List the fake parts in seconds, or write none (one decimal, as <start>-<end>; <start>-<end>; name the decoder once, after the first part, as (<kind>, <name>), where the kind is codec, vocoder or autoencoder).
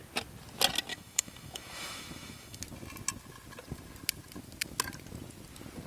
0.9-2.6 (autoencoder, DAC-VAE)